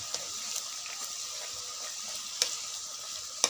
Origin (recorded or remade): recorded